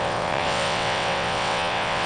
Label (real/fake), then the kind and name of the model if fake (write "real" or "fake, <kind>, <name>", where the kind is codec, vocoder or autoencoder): fake, vocoder, WaveNeXt